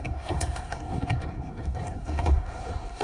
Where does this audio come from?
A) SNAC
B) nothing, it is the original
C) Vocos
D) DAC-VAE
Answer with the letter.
A